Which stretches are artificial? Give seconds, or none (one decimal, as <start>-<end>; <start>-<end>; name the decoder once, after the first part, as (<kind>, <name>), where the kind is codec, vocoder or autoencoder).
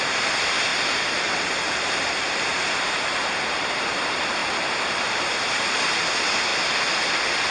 0.0-4.4 (vocoder, BigVGAN v2); 5.1-6.5